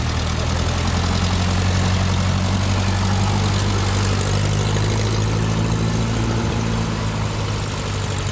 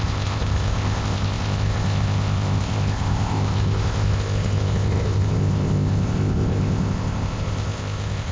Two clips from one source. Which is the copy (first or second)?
second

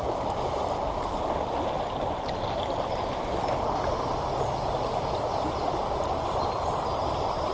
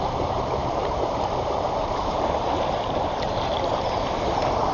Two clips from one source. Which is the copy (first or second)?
second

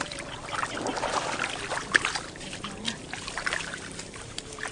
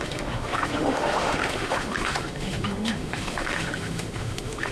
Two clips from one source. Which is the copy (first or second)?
second